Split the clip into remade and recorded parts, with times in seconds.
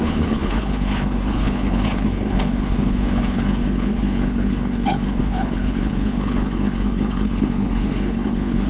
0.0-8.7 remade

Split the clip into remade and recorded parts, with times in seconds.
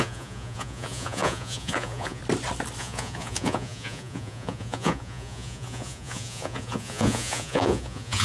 0.0-2.2 remade; 2.2-2.8 recorded; 2.8-8.2 remade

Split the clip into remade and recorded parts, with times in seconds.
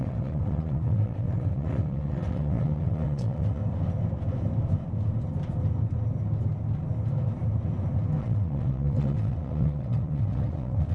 0.0-3.6 remade; 3.6-8.2 recorded; 8.2-10.9 remade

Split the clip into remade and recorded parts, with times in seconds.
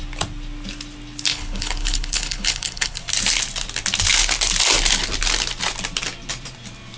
0.0-1.3 recorded; 1.3-3.0 remade; 3.0-7.0 recorded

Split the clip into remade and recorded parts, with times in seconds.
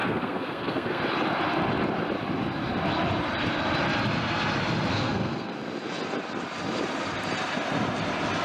0.0-1.0 remade; 1.0-4.9 recorded; 4.9-5.5 remade; 5.5-8.4 recorded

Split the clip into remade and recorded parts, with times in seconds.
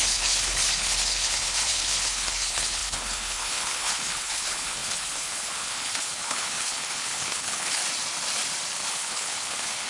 0.0-7.8 remade; 7.8-8.9 recorded; 8.9-9.9 remade